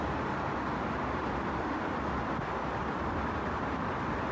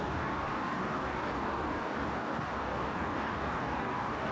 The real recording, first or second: first